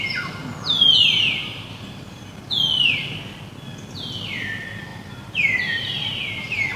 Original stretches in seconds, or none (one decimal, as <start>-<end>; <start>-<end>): 0.0-1.4; 2.4-4.9